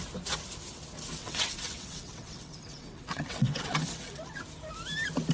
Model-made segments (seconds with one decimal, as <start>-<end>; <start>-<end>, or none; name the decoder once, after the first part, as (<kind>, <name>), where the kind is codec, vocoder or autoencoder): 1.2-4.4 (vocoder, WaveNeXt)